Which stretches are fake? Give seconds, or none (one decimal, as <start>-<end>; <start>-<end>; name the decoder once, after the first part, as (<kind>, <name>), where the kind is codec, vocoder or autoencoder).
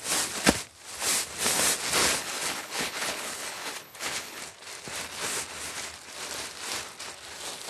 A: 2.0-4.4 (codec, HILCodec)